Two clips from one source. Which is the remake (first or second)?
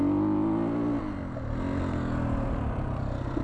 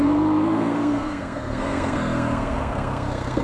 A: second